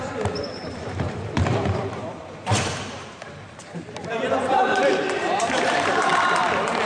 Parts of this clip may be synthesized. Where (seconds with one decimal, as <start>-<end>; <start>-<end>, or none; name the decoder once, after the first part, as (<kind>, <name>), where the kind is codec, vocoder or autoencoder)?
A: 0.0-6.1 (vocoder, BigVGAN v2)